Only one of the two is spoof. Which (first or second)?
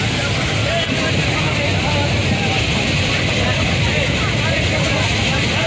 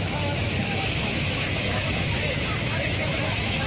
second